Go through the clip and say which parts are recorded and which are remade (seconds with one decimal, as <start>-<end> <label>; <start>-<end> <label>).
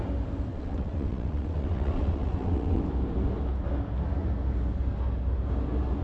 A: 0.0-0.5 recorded; 0.5-2.8 remade; 2.8-6.0 recorded